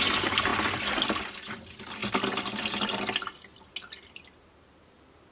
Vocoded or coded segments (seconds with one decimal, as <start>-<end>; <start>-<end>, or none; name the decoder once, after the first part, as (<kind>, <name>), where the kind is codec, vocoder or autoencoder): none